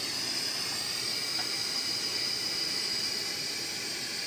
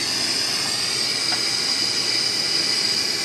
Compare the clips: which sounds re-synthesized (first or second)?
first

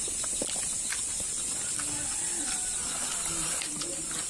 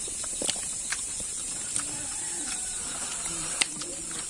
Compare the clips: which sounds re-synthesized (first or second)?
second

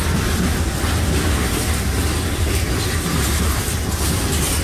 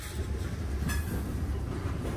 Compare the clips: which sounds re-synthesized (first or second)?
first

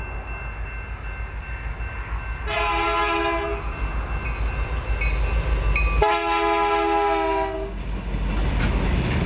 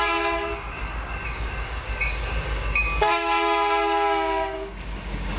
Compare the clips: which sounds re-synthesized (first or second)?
second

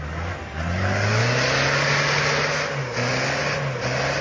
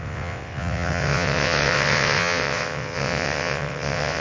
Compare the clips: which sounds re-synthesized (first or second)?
second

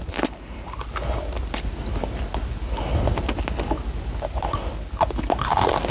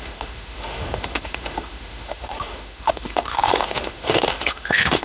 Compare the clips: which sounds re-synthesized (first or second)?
second